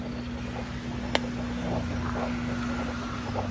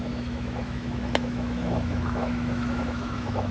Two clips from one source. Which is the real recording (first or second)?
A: first